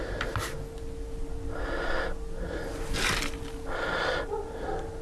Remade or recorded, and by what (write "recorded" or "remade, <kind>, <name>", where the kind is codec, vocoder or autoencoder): recorded